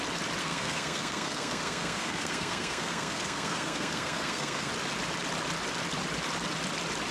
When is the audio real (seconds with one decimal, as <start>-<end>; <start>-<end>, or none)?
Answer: 0.0-0.4; 4.7-7.1